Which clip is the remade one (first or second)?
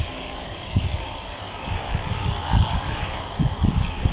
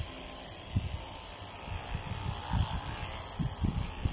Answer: first